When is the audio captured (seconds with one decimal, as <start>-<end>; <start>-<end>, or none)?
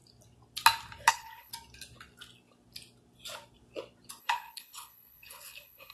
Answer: 0.0-1.1; 1.5-4.2